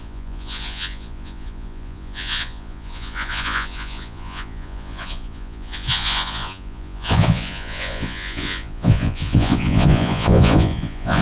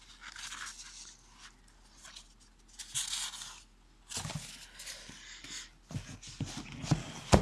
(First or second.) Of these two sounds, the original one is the second